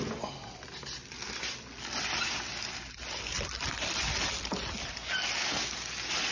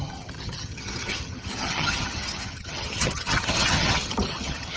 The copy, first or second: second